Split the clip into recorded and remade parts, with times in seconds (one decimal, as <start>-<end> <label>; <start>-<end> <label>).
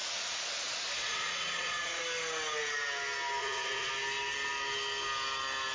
0.0-0.5 remade; 0.5-1.0 recorded; 1.0-2.0 remade; 2.0-3.4 recorded; 3.4-3.9 remade; 3.9-5.7 recorded